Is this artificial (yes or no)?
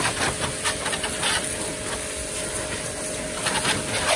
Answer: no